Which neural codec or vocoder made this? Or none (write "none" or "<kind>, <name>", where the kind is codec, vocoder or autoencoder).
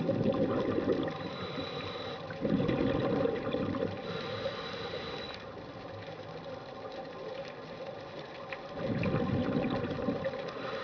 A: none